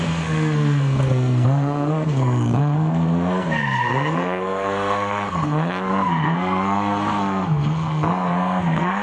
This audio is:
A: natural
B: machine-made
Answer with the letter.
B